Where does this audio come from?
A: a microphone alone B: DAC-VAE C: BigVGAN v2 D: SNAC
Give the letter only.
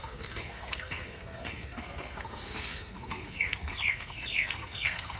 D